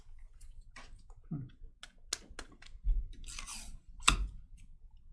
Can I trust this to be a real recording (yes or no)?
yes